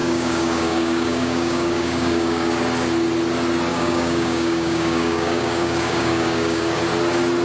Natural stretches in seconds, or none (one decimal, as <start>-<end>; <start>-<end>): 2.5-3.7; 6.8-7.4